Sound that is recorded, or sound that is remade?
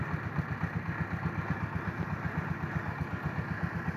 recorded